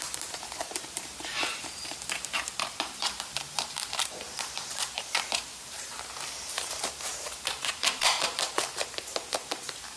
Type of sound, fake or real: fake